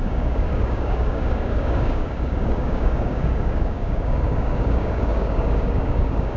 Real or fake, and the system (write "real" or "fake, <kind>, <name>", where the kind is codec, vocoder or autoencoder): fake, codec, DAC